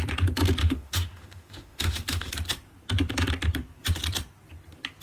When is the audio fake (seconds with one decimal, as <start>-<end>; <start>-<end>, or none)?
0.6-2.3